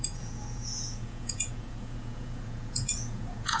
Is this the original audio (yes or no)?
no